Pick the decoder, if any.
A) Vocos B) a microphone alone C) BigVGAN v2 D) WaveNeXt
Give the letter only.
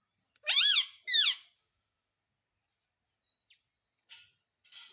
B